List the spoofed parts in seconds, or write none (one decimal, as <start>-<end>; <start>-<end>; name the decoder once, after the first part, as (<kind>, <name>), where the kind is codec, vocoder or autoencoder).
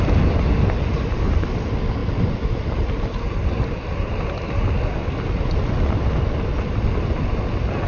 none